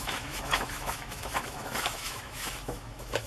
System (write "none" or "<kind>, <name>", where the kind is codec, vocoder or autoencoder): autoencoder, DAC-VAE